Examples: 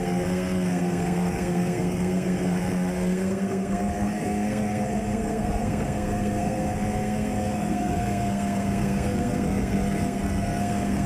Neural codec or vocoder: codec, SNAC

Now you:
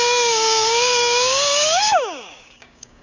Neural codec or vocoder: codec, DAC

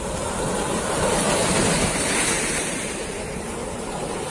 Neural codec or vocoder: none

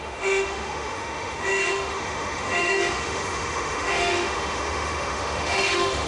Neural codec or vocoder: autoencoder, DAC-VAE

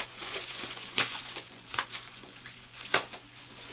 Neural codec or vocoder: vocoder, Vocos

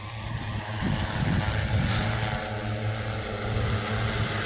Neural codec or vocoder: none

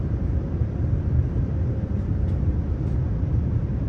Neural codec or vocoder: vocoder, BigVGAN v2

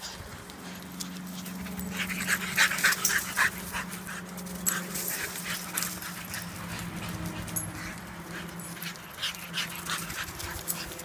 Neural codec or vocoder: none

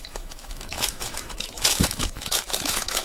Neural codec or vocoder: autoencoder, DAC-VAE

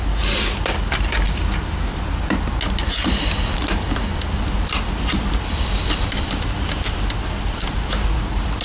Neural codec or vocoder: none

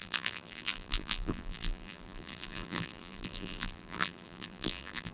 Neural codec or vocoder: vocoder, BigVGAN v2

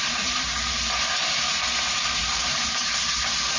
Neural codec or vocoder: vocoder, BigVGAN v2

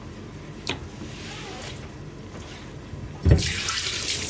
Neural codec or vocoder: none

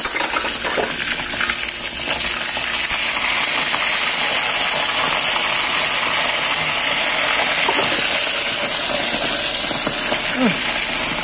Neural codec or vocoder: none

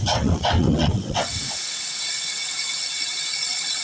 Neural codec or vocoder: vocoder, WaveNeXt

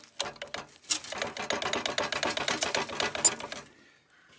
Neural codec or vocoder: none